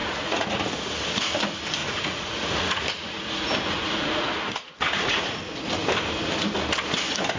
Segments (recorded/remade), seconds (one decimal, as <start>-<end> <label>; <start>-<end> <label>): 0.0-0.6 remade; 0.6-1.8 recorded; 1.8-5.4 remade; 5.4-7.4 recorded